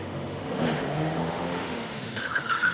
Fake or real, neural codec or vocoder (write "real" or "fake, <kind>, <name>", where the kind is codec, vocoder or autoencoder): fake, autoencoder, DAC-VAE